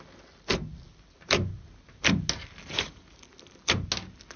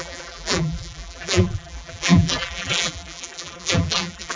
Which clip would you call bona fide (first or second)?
first